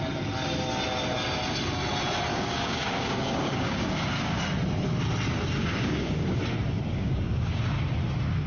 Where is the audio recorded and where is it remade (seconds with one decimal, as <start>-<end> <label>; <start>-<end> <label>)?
0.0-2.3 recorded; 2.3-4.4 remade; 4.4-5.6 recorded; 5.6-6.4 remade; 6.4-6.9 recorded; 6.9-7.6 remade; 7.6-8.5 recorded